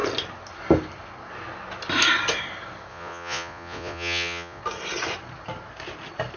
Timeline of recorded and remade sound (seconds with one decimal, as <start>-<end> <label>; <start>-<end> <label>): 0.0-2.9 recorded; 2.9-4.6 remade; 4.6-6.4 recorded